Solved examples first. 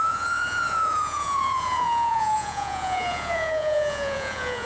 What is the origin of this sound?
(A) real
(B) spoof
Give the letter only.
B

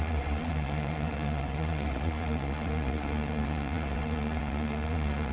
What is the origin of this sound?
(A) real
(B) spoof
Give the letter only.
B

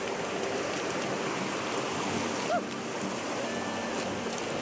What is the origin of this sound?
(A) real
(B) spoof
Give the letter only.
A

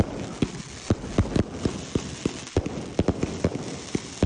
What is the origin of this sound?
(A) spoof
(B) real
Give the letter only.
B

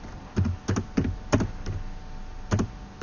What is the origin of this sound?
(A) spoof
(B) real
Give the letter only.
B